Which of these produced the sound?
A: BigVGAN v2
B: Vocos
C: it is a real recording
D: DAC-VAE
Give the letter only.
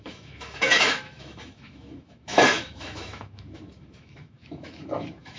D